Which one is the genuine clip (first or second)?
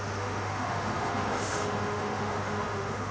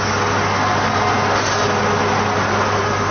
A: second